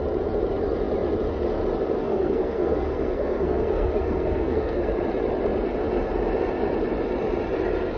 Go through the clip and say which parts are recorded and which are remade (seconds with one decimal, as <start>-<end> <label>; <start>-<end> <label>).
0.0-2.0 recorded; 2.0-4.9 remade; 4.9-8.0 recorded